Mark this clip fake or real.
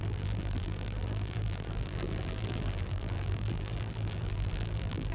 fake